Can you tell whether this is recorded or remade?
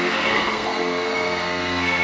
remade